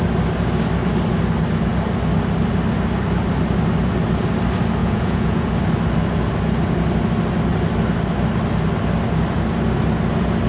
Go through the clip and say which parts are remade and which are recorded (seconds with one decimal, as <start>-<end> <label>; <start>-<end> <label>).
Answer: 0.0-4.8 recorded; 4.8-5.5 remade; 5.5-10.5 recorded